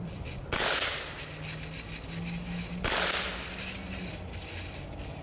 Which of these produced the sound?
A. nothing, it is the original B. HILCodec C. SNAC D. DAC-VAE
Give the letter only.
A